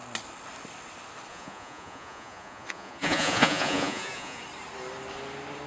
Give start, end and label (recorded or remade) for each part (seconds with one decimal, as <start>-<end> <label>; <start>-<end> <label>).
0.0-1.3 recorded; 1.3-4.4 remade; 4.4-5.7 recorded